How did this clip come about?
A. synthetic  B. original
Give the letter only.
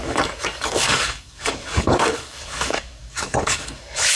A